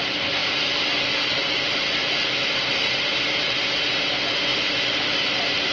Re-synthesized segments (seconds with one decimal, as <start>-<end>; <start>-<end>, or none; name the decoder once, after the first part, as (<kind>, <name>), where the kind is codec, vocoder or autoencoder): 0.4-3.8 (vocoder, BigVGAN v2); 4.5-5.1